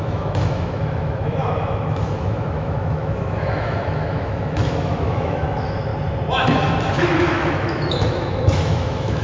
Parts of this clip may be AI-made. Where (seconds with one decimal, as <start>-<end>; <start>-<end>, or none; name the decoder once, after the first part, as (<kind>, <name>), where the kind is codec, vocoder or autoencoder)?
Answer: 0.0-5.9 (autoencoder, DAC-VAE); 6.9-9.2